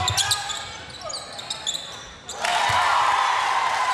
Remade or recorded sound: recorded